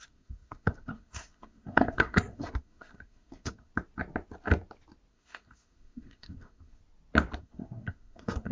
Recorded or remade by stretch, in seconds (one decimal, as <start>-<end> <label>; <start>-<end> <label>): 0.0-3.7 remade; 3.7-5.1 recorded; 5.1-6.8 remade; 6.8-7.4 recorded; 7.4-8.5 remade